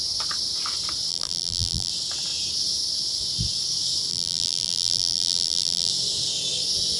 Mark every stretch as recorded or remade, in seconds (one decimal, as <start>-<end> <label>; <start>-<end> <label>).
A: 0.0-1.1 recorded; 1.1-1.9 remade; 1.9-4.1 recorded; 4.1-5.9 remade; 5.9-7.0 recorded